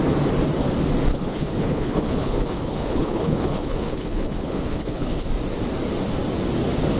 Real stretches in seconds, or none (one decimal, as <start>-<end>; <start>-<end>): 0.0-1.1; 5.3-7.0